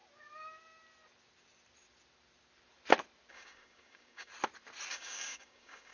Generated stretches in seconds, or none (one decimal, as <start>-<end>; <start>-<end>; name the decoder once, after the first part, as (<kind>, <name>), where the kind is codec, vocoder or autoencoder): 3.3-4.3 (codec, DAC); 4.9-5.9